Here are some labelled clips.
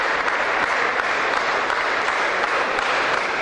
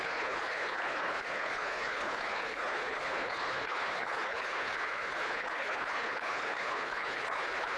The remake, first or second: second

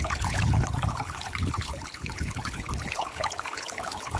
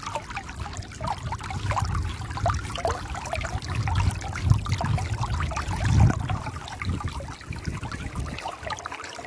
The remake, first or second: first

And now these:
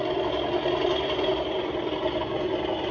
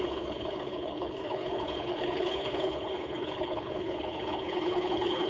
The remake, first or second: second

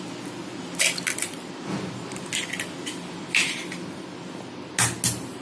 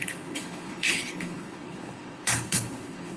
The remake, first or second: second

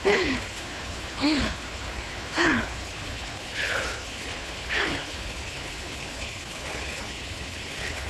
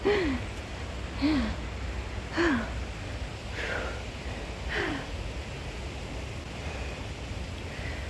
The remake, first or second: first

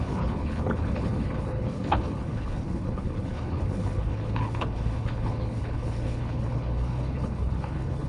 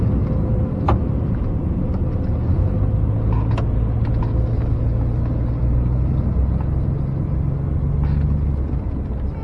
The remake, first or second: first